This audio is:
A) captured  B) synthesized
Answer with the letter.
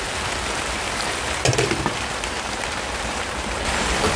A